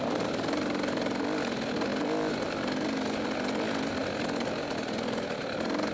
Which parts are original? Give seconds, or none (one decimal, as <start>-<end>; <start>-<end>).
0.0-5.9